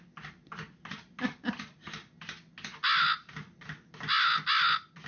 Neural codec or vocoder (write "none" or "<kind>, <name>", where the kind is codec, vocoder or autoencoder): none